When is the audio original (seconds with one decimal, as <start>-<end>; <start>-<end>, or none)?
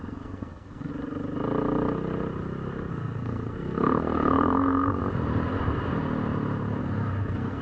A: 0.9-2.9; 5.0-6.8